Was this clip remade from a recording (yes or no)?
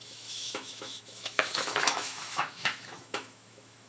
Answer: yes